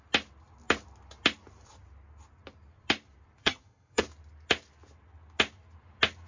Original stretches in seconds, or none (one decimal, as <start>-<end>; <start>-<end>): 0.0-3.4; 4.0-6.3